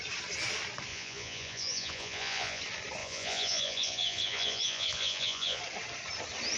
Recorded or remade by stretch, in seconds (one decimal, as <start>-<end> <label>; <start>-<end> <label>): 0.0-0.9 recorded; 0.9-2.6 remade; 2.6-3.0 recorded; 3.0-5.6 remade; 5.6-6.6 recorded